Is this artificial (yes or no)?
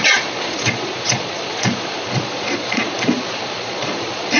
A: yes